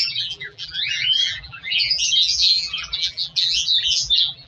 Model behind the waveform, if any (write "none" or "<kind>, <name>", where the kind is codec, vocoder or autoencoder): vocoder, BigVGAN v2